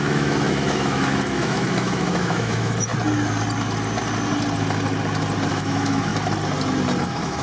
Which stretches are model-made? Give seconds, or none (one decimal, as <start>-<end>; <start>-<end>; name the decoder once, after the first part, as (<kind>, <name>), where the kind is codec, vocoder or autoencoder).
0.0-2.9 (autoencoder, DAC-VAE); 5.5-6.1; 7.0-7.4